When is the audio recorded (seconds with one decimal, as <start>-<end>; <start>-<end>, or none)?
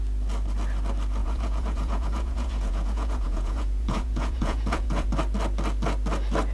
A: 0.0-1.2; 5.1-6.5